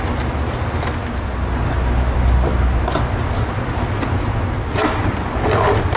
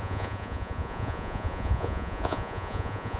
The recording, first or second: first